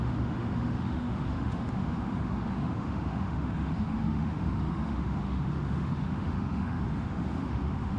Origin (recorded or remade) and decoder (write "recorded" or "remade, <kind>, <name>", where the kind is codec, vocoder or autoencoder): remade, autoencoder, DAC-VAE